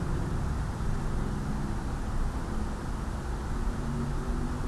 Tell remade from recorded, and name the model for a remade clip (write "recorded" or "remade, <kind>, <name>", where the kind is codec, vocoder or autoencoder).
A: recorded